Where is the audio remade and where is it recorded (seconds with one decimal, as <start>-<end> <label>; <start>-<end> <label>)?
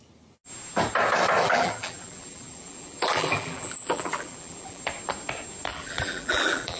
0.0-1.4 recorded; 1.4-4.8 remade; 4.8-5.7 recorded; 5.7-6.8 remade